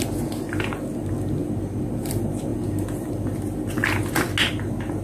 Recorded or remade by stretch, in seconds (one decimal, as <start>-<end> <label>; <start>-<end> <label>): 0.0-5.0 recorded

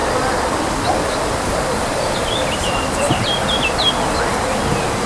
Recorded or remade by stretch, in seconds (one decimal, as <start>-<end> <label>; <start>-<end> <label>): 0.0-3.0 remade; 3.0-5.1 recorded

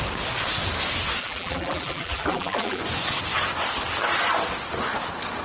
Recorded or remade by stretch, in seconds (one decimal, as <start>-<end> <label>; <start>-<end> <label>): 0.0-1.2 recorded; 1.2-2.8 remade; 2.8-5.4 recorded

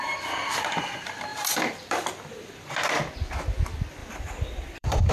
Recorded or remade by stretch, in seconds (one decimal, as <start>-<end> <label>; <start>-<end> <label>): 0.0-1.3 recorded; 1.3-2.7 remade; 2.7-4.0 recorded; 4.0-5.1 remade